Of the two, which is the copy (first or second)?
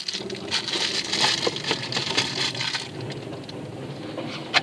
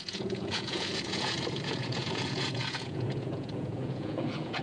second